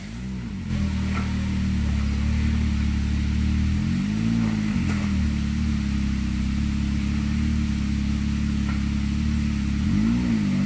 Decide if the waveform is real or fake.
real